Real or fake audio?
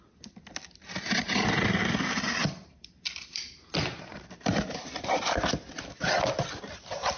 real